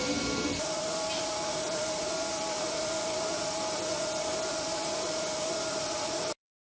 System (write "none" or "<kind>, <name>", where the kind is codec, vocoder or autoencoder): none